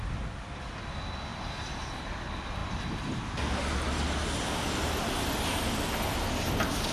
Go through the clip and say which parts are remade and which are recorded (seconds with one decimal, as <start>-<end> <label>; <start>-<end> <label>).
0.0-6.9 recorded